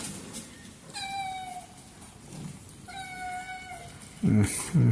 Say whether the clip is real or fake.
real